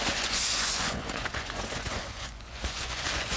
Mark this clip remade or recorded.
remade